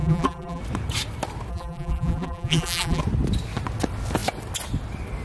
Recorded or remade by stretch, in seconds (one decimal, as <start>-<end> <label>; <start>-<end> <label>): 0.0-0.6 remade; 0.6-1.5 recorded; 1.5-3.0 remade; 3.0-5.2 recorded